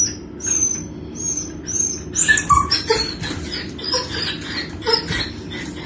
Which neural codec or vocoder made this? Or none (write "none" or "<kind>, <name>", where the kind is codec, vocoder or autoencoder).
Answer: none